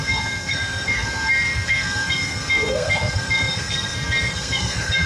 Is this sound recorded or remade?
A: remade